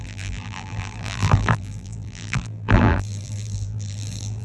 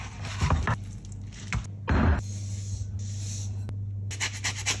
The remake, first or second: first